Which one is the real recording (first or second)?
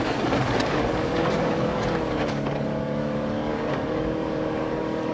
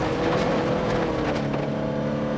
second